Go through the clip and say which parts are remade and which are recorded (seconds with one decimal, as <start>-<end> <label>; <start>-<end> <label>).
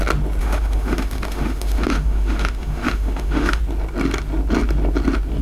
0.0-0.4 recorded; 0.4-3.6 remade; 3.6-5.4 recorded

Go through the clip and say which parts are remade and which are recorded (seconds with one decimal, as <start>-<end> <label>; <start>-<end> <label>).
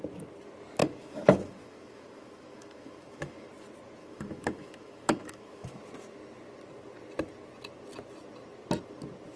0.0-0.8 recorded; 0.8-3.5 remade; 3.5-4.0 recorded; 4.0-5.8 remade; 5.8-9.4 recorded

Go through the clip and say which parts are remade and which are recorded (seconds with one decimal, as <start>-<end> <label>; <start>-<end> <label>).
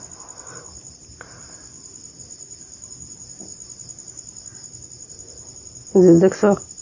0.0-6.8 recorded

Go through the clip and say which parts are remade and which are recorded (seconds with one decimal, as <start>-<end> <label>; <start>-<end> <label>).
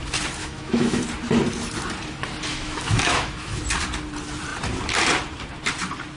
0.0-0.4 recorded; 0.4-1.0 remade; 1.0-2.5 recorded; 2.5-3.6 remade; 3.6-6.2 recorded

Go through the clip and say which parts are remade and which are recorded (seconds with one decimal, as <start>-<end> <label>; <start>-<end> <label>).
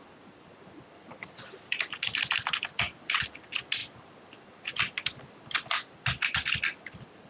0.0-7.3 recorded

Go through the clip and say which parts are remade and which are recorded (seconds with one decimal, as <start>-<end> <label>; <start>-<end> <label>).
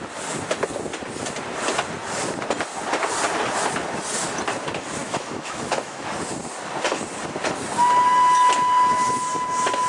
0.0-5.0 recorded; 5.0-6.1 remade; 6.1-9.9 recorded